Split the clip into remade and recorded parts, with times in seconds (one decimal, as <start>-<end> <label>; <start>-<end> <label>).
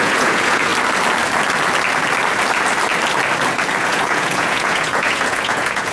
0.0-0.7 remade; 0.7-3.8 recorded; 3.8-5.9 remade